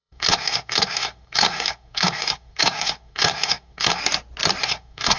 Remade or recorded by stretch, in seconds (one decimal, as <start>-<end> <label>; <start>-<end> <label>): 0.0-4.0 remade; 4.0-4.6 recorded; 4.6-5.2 remade